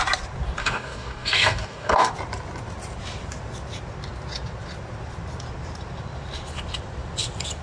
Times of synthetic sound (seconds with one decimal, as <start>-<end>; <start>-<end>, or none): 0.6-2.1